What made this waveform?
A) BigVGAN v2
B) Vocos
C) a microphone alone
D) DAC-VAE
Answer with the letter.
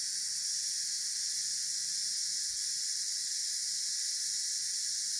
C